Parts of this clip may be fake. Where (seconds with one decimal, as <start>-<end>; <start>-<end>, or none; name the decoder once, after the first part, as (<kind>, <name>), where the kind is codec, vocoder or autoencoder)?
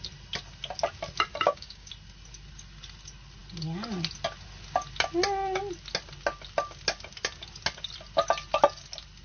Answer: 1.3-1.9 (codec, DAC)